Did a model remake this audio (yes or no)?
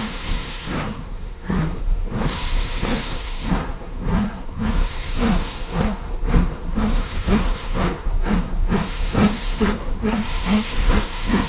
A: yes